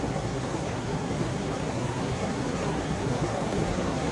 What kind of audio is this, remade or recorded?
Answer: remade